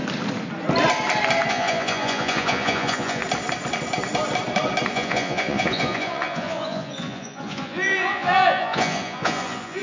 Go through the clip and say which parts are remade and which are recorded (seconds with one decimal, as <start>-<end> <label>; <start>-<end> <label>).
0.0-1.5 recorded; 1.5-3.2 remade; 3.2-4.9 recorded; 4.9-9.8 remade